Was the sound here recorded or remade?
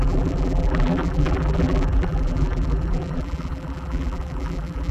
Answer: remade